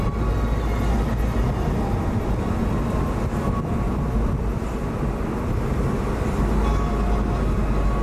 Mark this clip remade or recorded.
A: recorded